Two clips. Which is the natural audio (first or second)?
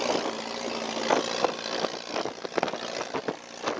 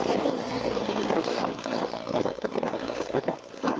first